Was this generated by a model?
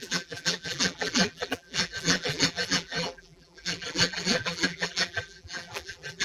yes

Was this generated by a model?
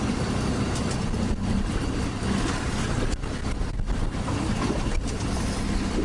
no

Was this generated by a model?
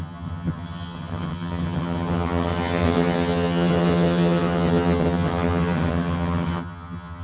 yes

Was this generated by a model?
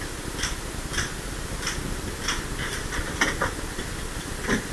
no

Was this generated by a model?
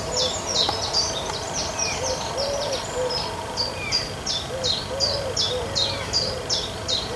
no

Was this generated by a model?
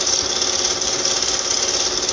no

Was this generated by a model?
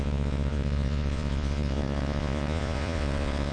yes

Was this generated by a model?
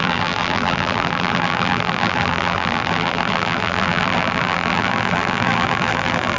yes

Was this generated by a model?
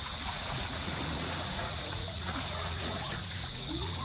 yes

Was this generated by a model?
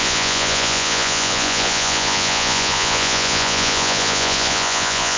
yes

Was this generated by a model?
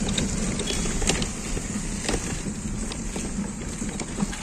no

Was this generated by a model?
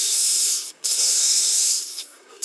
yes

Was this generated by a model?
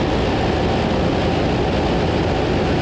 no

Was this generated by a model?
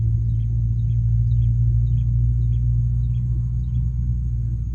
no